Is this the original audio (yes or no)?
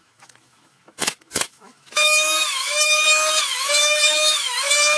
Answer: no